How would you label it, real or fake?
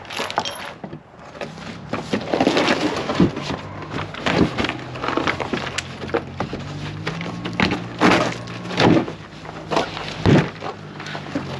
real